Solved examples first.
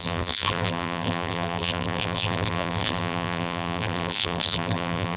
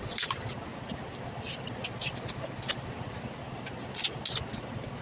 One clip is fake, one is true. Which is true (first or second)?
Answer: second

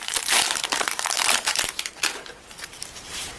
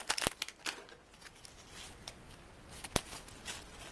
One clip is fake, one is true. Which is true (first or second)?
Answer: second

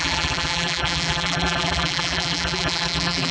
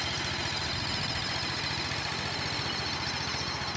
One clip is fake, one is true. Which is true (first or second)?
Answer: second